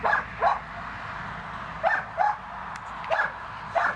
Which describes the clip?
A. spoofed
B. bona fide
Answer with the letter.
B